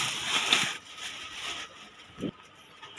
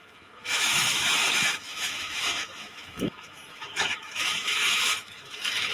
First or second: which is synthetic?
second